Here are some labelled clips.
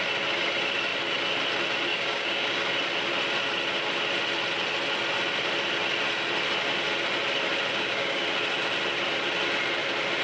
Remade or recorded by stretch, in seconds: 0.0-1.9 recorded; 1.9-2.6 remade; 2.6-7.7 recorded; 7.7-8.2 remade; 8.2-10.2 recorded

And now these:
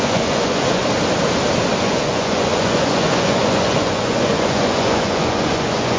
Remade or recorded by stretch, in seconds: 0.0-0.8 remade; 0.8-1.8 recorded; 1.8-6.0 remade

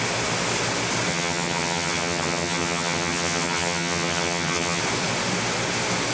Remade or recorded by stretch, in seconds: 0.0-1.1 recorded; 1.1-4.8 remade; 4.8-6.1 recorded

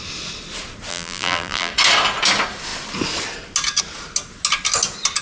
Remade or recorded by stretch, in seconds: 0.0-0.9 recorded; 0.9-1.7 remade; 1.7-5.2 recorded

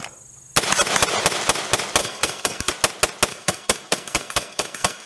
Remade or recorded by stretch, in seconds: 0.0-2.0 recorded; 2.0-2.7 remade; 2.7-3.3 recorded; 3.3-5.1 remade

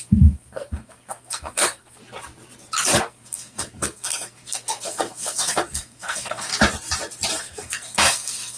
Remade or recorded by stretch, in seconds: 0.0-2.0 remade; 2.0-3.0 recorded; 3.0-6.5 remade; 6.5-7.4 recorded; 7.4-8.6 remade